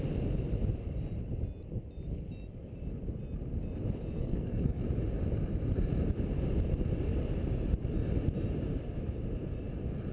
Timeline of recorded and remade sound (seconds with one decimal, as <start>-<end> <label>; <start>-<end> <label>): 0.0-4.2 recorded; 4.2-4.8 remade; 4.8-10.1 recorded

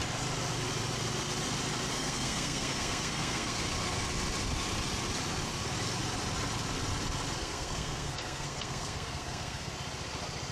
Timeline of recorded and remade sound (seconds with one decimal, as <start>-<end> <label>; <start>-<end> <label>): 0.0-1.9 recorded; 1.9-3.6 remade; 3.6-7.4 recorded; 7.4-9.7 remade; 9.7-10.5 recorded

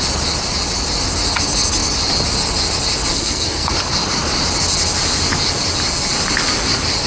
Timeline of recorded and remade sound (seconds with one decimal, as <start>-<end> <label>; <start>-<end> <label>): 0.0-3.1 recorded; 3.1-3.7 remade; 3.7-7.1 recorded

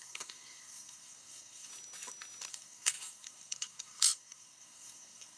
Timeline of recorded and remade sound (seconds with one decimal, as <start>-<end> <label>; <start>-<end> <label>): 0.0-1.7 remade; 1.7-2.5 recorded; 2.5-5.4 remade

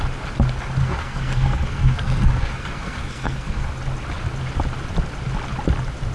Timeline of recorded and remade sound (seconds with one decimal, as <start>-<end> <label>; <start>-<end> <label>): 0.0-0.8 recorded; 0.8-3.7 remade; 3.7-6.1 recorded

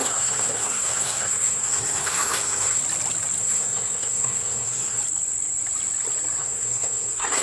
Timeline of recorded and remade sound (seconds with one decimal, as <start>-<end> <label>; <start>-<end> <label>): 0.0-2.8 remade; 2.8-3.4 recorded; 3.4-5.0 remade; 5.0-6.4 recorded; 6.4-7.4 remade

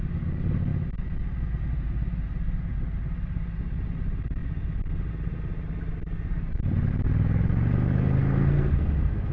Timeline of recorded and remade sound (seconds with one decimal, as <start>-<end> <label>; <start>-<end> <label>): 0.0-8.2 recorded; 8.2-9.3 remade

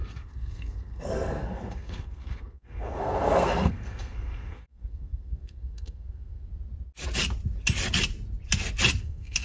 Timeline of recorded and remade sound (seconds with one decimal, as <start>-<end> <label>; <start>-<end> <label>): 0.0-6.4 remade; 6.4-9.0 recorded; 9.0-9.4 remade